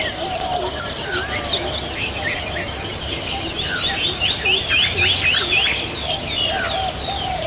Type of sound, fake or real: fake